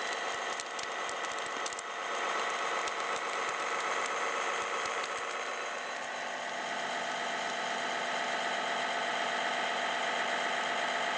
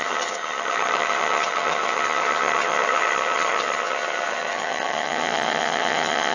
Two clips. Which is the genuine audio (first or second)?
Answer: first